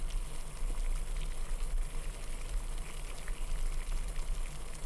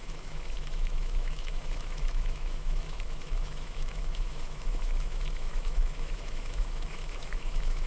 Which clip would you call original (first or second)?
first